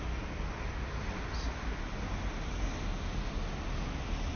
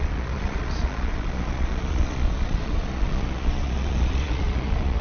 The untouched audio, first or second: first